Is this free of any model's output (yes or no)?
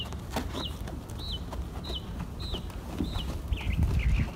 yes